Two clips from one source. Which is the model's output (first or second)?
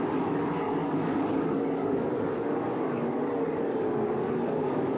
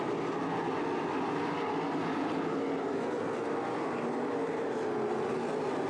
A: first